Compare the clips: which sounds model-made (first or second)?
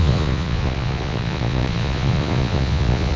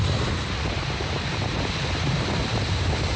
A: first